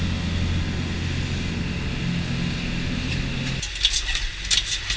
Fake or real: real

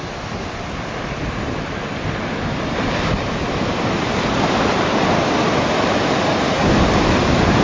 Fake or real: real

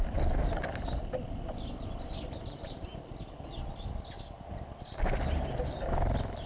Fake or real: real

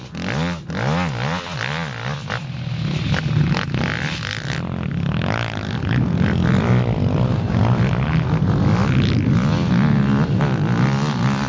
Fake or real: real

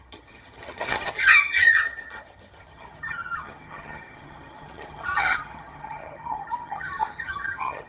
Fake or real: fake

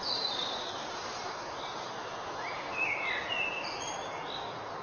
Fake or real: real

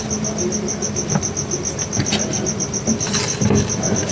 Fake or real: real